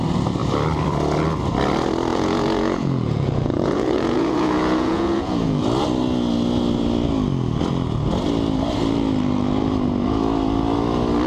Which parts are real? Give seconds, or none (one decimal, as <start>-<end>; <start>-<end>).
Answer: 0.0-2.1; 5.6-11.3